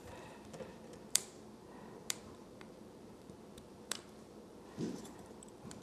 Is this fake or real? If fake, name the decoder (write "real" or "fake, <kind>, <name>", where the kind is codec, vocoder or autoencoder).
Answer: fake, vocoder, BigVGAN v2